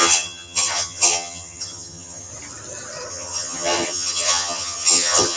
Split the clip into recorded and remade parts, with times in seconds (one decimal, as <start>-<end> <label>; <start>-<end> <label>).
0.0-2.3 remade; 2.3-3.1 recorded; 3.1-5.4 remade